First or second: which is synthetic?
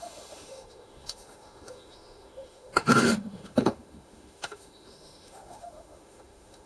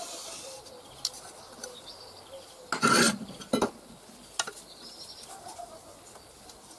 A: first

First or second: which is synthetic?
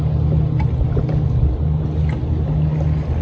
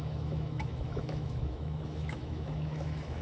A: second